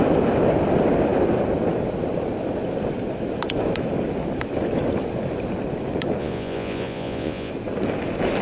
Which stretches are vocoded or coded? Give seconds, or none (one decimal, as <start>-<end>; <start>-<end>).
6.2-7.5

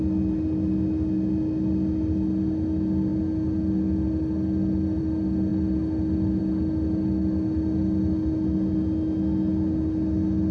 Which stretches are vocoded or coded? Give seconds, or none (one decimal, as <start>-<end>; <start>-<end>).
none

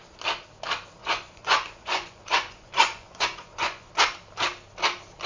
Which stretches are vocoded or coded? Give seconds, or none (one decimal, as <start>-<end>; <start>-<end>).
1.0-3.9

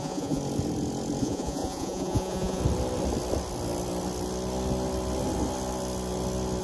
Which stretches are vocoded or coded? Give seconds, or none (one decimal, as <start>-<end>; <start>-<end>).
0.0-0.4; 1.2-2.6

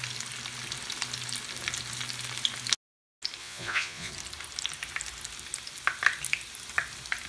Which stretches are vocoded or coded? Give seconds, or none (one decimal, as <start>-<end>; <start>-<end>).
3.4-4.1

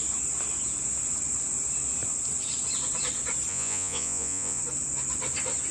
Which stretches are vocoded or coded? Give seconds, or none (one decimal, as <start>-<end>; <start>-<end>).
3.5-4.6

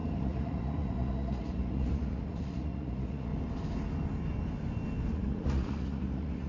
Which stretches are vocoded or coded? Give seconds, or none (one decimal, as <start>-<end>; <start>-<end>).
0.0-3.3; 5.1-6.5

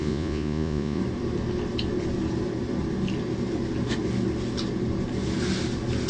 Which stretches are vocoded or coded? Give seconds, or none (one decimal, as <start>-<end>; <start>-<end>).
0.0-1.0